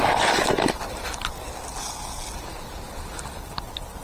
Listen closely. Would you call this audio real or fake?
real